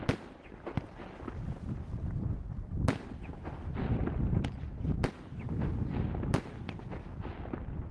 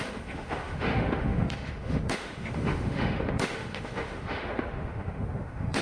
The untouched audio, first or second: first